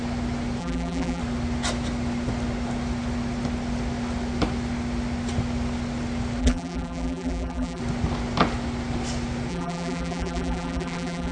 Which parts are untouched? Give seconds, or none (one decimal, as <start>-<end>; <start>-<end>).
0.0-0.6; 1.2-6.4; 7.8-9.5

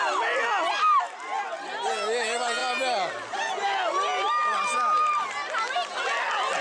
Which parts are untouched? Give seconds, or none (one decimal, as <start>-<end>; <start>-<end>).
0.0-6.6

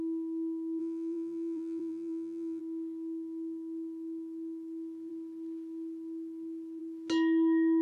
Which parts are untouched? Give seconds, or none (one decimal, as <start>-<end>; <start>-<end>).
0.0-0.8; 2.6-7.8

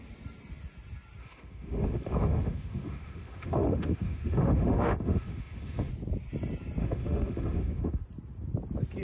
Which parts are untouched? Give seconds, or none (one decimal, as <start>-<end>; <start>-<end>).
0.0-1.2; 5.9-6.8; 8.0-9.0

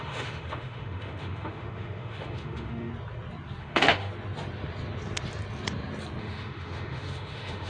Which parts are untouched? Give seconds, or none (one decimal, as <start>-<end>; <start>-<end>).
2.9-3.6; 4.1-6.2

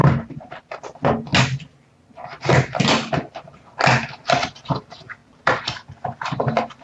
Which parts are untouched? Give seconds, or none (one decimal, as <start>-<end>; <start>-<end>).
0.8-5.2; 6.2-6.8